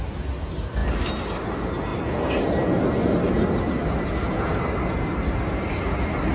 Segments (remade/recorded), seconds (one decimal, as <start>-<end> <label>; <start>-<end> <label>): 0.0-6.3 recorded